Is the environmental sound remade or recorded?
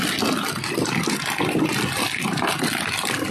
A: recorded